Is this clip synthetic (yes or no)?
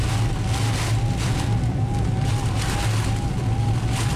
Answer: no